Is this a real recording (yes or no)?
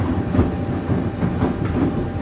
yes